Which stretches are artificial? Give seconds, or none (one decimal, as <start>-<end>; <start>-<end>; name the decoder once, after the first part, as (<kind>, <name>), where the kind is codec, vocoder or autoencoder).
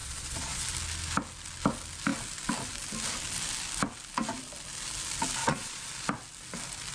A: 0.0-0.6 (vocoder, Vocos); 5.4-5.9